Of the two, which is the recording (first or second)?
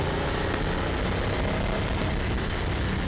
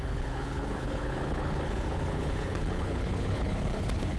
first